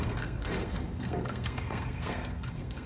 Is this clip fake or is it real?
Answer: fake